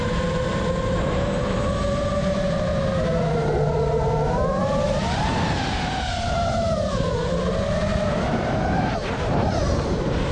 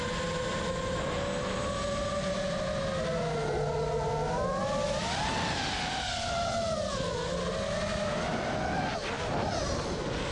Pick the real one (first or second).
second